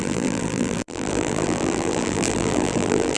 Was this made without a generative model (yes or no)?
no